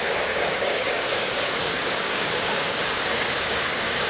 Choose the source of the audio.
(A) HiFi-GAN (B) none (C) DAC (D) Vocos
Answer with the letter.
C